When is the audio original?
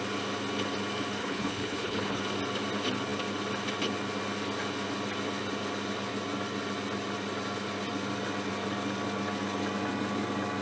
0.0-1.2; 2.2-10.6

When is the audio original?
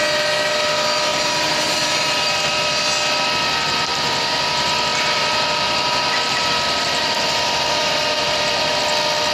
0.0-1.1; 2.8-3.9; 4.4-4.9; 8.8-9.3